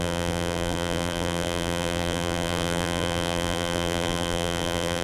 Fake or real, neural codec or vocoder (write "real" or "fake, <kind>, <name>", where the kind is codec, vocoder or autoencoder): fake, vocoder, BigVGAN v2